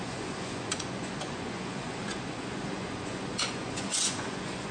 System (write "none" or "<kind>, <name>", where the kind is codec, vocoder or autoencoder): vocoder, Vocos